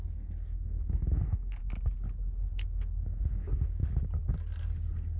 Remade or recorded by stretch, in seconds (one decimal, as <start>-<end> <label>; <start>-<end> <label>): 0.0-1.6 remade; 1.6-3.3 recorded; 3.3-3.8 remade; 3.8-5.2 recorded